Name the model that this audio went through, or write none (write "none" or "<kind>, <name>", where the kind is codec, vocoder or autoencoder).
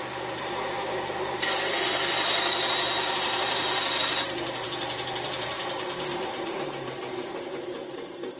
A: vocoder, BigVGAN v2